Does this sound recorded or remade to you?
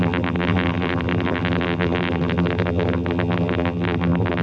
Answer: remade